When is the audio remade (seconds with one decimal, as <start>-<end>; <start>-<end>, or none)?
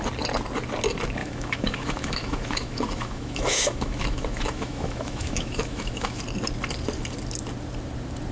1.2-6.2